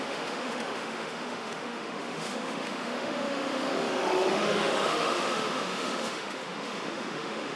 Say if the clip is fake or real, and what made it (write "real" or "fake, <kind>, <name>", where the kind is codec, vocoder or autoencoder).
fake, autoencoder, DAC-VAE